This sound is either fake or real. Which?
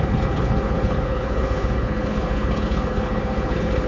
fake